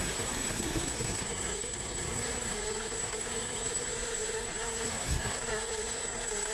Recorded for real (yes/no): no